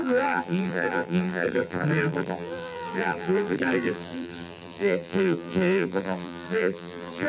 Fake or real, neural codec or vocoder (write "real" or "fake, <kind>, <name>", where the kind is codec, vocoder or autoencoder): fake, vocoder, BigVGAN v2